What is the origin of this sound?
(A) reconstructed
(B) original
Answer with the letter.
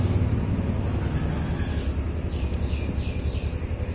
B